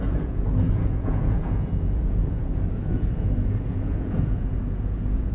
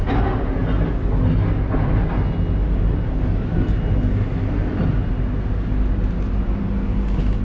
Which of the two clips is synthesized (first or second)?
first